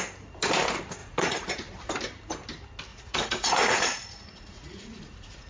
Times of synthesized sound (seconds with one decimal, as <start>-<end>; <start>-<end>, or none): 1.0-1.9; 2.9-5.5